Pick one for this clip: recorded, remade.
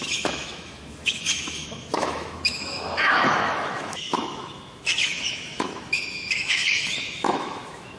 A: remade